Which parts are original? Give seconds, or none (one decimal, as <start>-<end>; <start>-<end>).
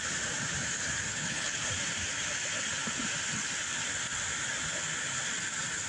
0.0-1.1; 1.7-5.9